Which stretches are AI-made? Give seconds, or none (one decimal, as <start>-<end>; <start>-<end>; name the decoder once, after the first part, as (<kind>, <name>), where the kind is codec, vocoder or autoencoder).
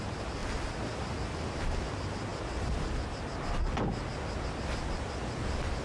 none